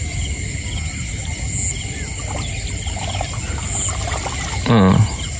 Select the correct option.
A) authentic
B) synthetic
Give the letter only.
A